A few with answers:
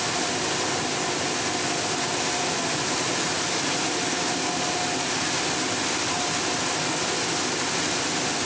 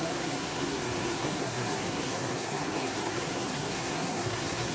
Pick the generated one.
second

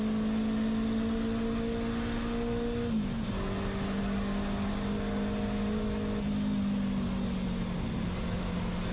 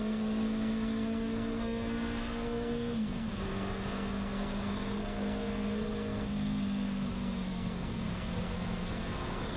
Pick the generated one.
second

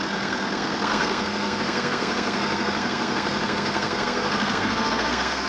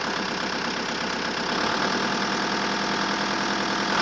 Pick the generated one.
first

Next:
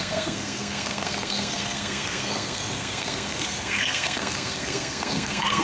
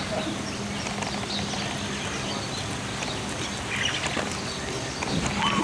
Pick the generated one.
first